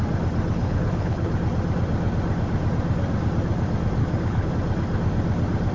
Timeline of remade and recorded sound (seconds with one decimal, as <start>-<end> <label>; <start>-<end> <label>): 0.0-0.6 recorded; 0.6-1.3 remade; 1.3-4.0 recorded; 4.0-4.5 remade; 4.5-5.7 recorded

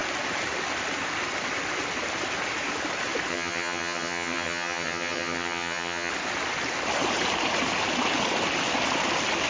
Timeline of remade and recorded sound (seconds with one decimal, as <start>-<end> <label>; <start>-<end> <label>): 0.0-3.3 recorded; 3.3-6.1 remade; 6.1-9.5 recorded

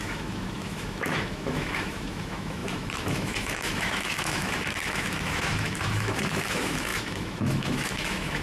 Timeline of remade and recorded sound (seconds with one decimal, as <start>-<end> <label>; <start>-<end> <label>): 0.0-8.4 remade

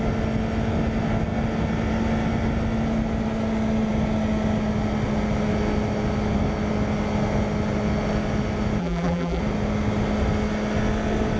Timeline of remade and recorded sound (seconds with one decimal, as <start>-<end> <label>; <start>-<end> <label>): 0.0-8.8 recorded; 8.8-9.4 remade; 9.4-11.4 recorded